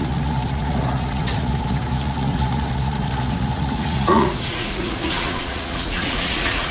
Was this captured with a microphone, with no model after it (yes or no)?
no